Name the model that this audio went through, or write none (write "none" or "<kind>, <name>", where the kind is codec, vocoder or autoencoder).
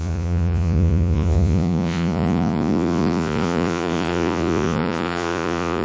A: vocoder, Vocos